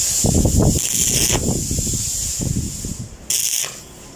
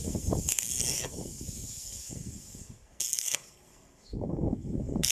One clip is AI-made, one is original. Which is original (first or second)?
first